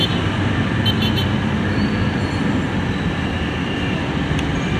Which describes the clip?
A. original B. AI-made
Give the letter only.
B